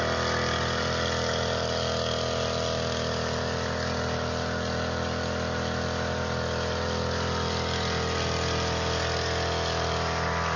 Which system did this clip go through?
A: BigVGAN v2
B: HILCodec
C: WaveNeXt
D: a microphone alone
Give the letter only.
D